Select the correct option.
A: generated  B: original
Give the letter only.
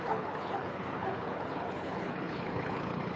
A